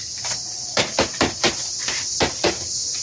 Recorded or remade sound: remade